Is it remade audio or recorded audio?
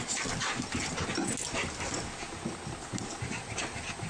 recorded